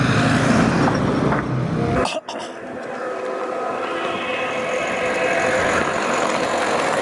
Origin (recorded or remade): recorded